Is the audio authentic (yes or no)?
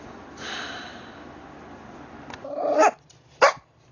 yes